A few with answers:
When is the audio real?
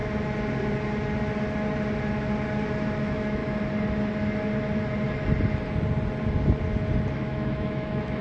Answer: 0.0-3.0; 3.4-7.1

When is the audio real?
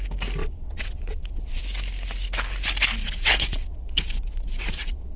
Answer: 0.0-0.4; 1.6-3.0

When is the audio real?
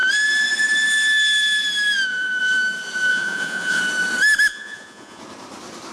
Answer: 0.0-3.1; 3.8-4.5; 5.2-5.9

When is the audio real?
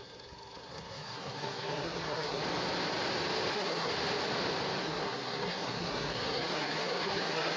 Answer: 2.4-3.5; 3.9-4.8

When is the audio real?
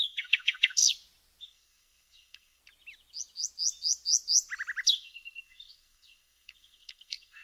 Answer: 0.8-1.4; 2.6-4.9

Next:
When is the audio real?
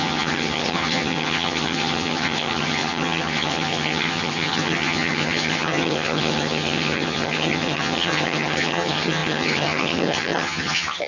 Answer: none